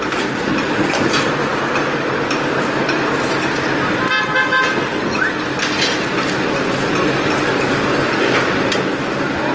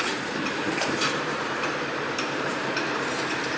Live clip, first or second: first